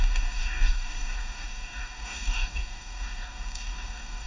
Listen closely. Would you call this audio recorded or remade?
remade